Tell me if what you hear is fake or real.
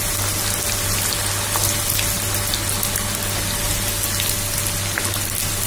real